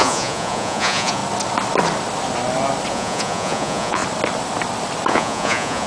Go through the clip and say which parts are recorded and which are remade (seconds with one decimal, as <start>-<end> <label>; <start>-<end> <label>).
0.0-1.2 remade; 1.2-2.9 recorded; 2.9-4.0 remade; 4.0-5.1 recorded; 5.1-5.9 remade